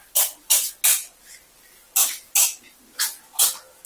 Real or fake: real